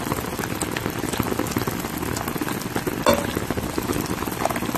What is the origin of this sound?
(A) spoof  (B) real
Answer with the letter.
B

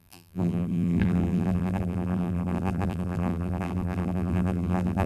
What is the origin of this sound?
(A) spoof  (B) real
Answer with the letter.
A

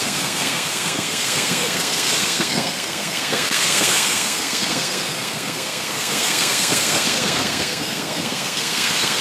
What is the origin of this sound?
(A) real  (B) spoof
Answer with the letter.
B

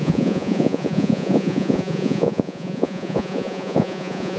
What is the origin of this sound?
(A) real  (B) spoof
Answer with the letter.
B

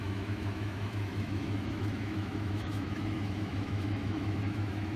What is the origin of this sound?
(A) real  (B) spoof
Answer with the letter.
B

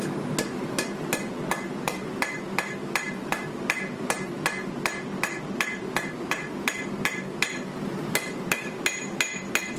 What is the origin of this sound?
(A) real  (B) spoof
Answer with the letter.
A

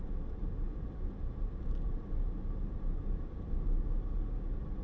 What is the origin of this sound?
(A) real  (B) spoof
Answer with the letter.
A